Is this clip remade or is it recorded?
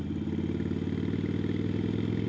recorded